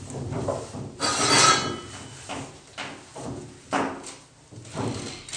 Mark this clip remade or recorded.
recorded